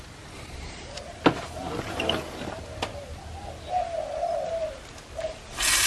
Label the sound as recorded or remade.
recorded